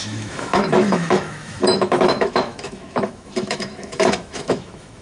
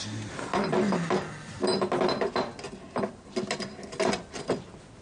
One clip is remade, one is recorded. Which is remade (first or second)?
first